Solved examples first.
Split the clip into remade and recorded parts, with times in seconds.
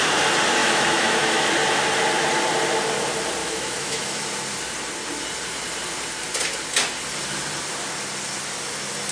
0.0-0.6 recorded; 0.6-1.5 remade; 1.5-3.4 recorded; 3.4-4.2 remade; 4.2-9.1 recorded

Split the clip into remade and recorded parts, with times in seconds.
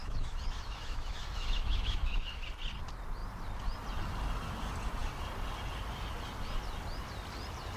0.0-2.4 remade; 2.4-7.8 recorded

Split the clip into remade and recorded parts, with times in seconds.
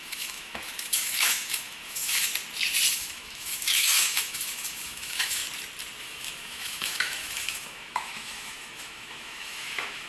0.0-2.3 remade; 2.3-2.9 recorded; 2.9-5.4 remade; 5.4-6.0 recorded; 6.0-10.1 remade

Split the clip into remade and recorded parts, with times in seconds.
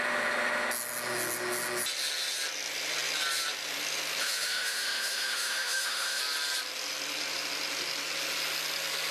0.0-4.2 recorded; 4.2-6.2 remade; 6.2-9.1 recorded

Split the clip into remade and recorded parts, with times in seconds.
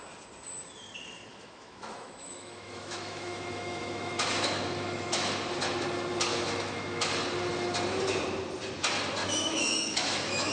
0.0-1.3 recorded; 1.3-5.3 remade; 5.3-6.3 recorded; 6.3-7.1 remade; 7.1-9.2 recorded; 9.2-10.5 remade